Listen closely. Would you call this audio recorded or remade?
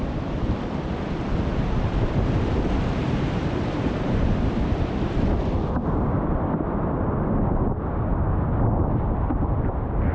recorded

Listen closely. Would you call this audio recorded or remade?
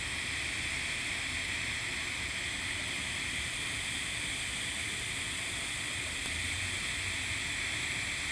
recorded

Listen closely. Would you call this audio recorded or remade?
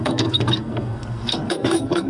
remade